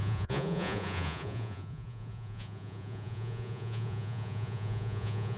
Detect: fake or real fake